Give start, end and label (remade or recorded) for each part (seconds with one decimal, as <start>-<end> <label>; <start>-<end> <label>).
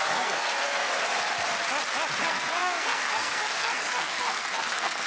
0.0-0.9 remade; 0.9-2.2 recorded; 2.2-5.1 remade